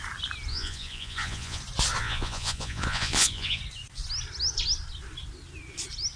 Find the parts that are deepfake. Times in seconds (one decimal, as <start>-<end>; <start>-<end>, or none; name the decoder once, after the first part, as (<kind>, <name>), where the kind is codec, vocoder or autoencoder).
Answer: 0.5-1.6 (vocoder, Vocos); 2.0-3.6